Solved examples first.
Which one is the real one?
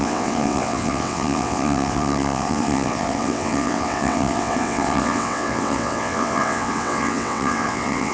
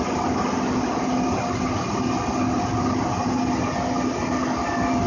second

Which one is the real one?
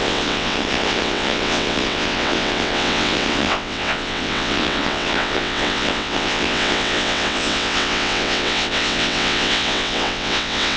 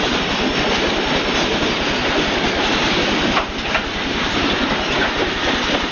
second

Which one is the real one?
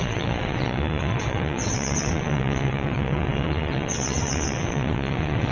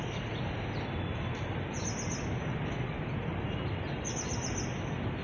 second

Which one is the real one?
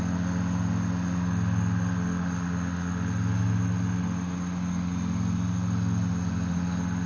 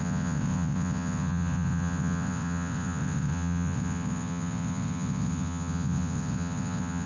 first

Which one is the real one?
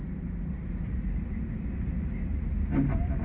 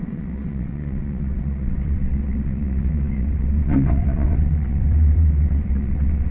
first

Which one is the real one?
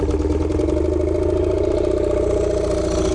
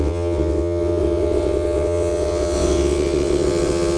first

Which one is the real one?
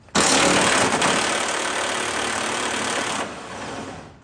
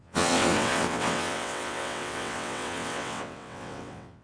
first